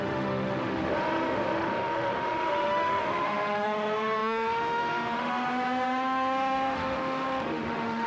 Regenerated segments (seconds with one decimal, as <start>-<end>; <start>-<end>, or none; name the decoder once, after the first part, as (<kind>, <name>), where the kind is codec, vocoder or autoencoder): 0.0-8.1 (autoencoder, DAC-VAE)